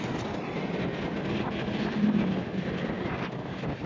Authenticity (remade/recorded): remade